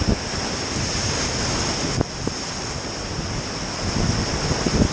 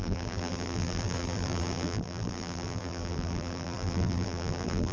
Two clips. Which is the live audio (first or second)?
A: first